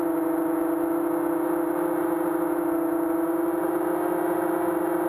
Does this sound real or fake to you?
real